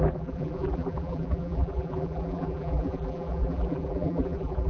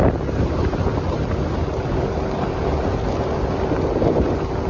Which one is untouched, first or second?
second